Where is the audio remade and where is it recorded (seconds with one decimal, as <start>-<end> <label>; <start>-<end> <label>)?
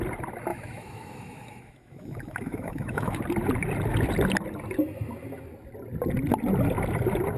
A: 0.0-0.5 recorded; 0.5-3.2 remade; 3.2-7.4 recorded